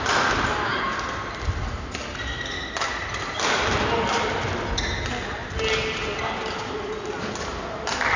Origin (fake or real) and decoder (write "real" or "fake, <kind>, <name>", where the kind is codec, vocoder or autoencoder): real